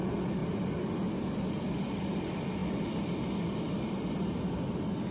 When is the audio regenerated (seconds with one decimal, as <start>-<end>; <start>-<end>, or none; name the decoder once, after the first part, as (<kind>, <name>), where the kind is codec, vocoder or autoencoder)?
none